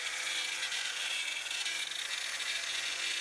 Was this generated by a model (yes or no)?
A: yes